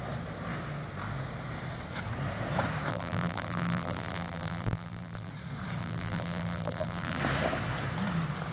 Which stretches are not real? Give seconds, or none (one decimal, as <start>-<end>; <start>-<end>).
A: 2.9-5.3; 5.8-7.2